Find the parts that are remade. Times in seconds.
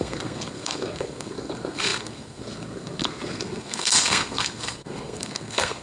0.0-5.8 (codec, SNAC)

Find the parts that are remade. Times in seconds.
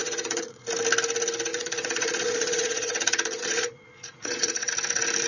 0.0-0.6 (vocoder, Vocos); 1.5-4.7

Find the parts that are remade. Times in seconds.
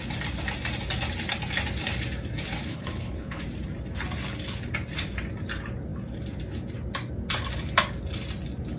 2.7-3.4 (codec, HILCodec)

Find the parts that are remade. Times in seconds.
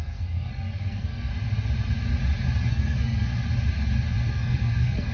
0.0-1.3 (codec, SNAC); 2.7-3.3; 4.3-5.1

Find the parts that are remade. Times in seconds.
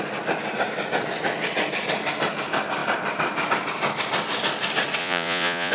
5.0-5.7 (vocoder, Vocos)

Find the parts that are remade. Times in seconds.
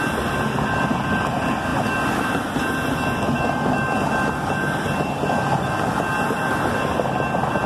none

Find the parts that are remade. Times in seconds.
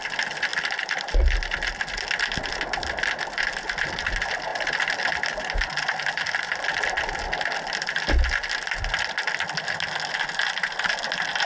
none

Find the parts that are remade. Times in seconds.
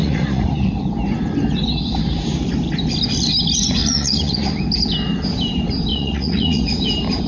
0.0-0.7 (vocoder, Vocos); 3.8-4.6; 5.9-6.6